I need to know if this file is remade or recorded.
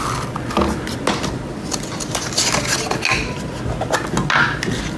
recorded